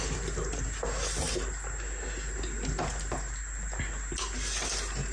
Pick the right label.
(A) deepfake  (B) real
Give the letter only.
B